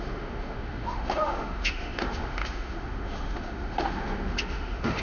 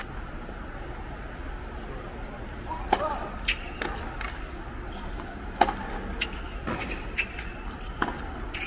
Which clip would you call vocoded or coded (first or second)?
first